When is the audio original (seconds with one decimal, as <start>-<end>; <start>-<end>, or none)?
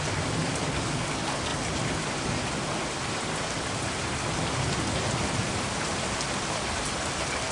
0.0-0.4; 1.1-7.5